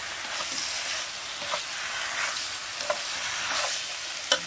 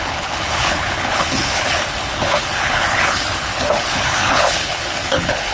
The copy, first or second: second